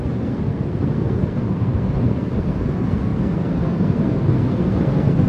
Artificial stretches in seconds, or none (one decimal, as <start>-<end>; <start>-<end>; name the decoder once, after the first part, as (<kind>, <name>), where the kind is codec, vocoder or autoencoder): 0.0-5.3 (codec, SNAC)